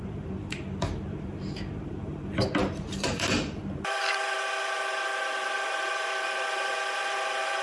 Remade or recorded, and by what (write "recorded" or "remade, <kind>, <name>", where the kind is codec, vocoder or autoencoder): remade, vocoder, BigVGAN v2